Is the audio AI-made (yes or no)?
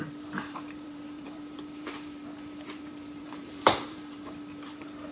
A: yes